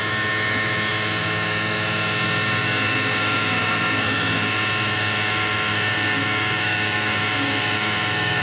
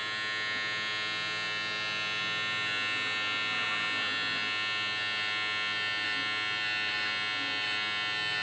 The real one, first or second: second